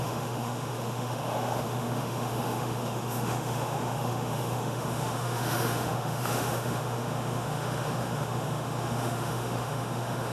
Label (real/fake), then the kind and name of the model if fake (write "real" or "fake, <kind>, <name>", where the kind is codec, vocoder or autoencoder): fake, autoencoder, DAC-VAE